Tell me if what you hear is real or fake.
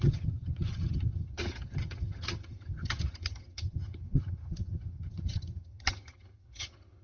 fake